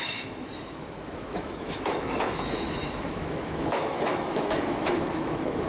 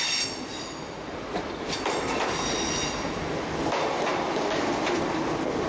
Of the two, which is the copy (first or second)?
first